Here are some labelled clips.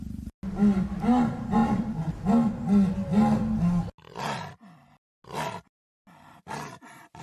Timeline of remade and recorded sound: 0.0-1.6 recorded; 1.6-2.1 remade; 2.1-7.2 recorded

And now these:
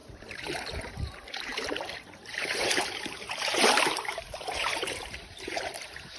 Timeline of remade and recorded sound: 0.0-6.2 remade

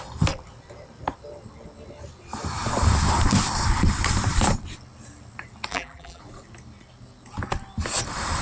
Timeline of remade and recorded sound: 0.0-5.7 recorded; 5.7-6.2 remade; 6.2-8.4 recorded

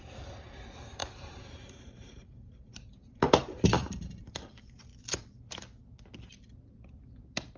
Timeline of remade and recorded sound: 0.0-4.9 remade; 4.9-7.6 recorded

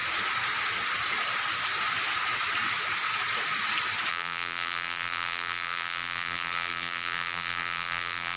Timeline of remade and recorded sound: 0.0-4.1 recorded; 4.1-8.4 remade